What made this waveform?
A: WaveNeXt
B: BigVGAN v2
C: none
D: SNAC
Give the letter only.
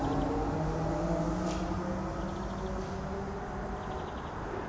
C